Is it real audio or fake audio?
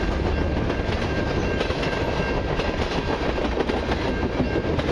real